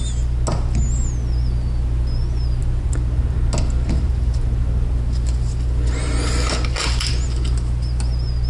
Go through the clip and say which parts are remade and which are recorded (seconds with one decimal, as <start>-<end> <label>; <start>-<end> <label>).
0.0-8.5 recorded